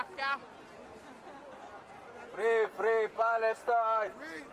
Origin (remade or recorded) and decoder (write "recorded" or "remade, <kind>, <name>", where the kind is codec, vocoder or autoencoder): recorded